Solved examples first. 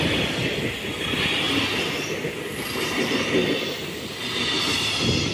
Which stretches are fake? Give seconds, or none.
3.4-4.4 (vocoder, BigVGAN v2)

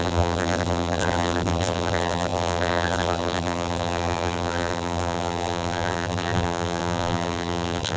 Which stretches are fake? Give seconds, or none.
0.0-8.0 (vocoder, BigVGAN v2)

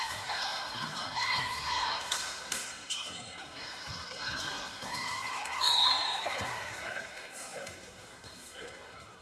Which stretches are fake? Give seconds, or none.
0.0-9.2 (codec, SNAC)

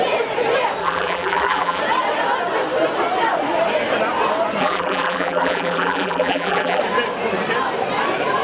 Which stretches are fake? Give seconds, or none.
0.8-1.8 (vocoder, BigVGAN v2); 4.6-6.8

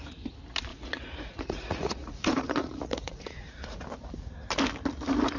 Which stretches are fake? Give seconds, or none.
0.7-3.8 (vocoder, Vocos)

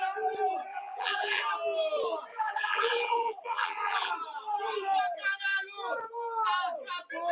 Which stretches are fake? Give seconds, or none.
0.7-1.4 (vocoder, BigVGAN v2); 2.3-4.1